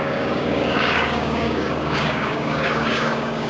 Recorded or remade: remade